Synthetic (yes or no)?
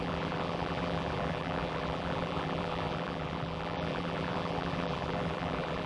yes